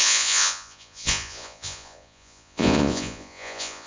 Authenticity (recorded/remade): remade